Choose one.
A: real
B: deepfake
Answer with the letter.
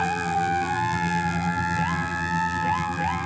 B